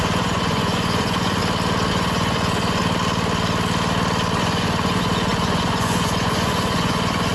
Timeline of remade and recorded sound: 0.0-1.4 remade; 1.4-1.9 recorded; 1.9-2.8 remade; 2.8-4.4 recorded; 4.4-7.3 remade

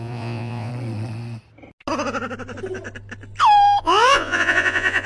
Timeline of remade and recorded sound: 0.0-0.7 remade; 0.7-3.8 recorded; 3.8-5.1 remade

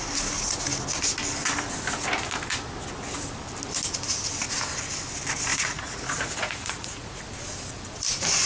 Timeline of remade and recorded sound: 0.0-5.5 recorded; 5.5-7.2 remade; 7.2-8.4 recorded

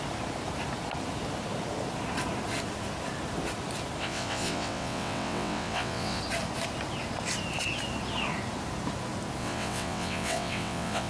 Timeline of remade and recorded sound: 0.0-4.0 recorded; 4.0-6.2 remade; 6.2-9.4 recorded; 9.4-11.1 remade

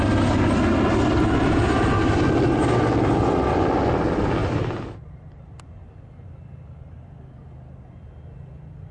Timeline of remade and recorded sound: 0.0-4.4 recorded; 4.4-5.3 remade; 5.3-8.9 recorded

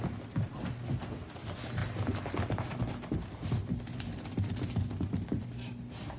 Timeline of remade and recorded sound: 0.0-6.2 recorded

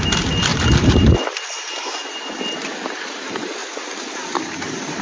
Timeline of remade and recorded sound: 0.0-5.0 recorded

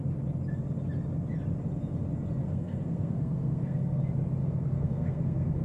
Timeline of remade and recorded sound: 0.0-2.4 recorded; 2.4-4.0 remade; 4.0-4.4 recorded; 4.4-5.6 remade